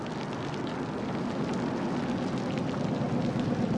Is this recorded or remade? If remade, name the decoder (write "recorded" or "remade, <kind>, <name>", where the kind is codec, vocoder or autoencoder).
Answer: recorded